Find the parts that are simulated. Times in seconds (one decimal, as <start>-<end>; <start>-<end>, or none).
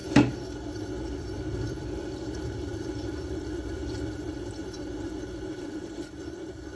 0.0-6.8